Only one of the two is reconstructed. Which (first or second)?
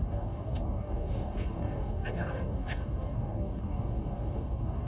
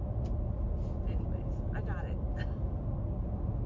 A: first